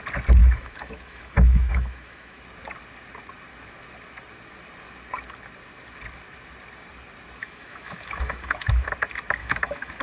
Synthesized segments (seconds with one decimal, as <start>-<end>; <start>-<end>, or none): 0.4-2.4; 7.4-8.9; 9.4-10.0